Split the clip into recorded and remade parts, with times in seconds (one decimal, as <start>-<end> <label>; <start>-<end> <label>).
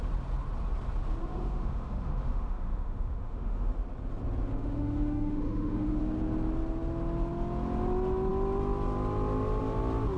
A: 0.0-1.2 recorded; 1.2-3.7 remade; 3.7-4.5 recorded; 4.5-6.0 remade; 6.0-10.2 recorded